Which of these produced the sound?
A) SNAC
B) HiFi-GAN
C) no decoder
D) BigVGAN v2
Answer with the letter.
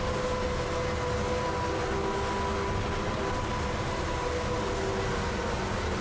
C